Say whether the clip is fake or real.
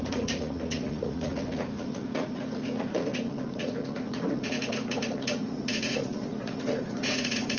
fake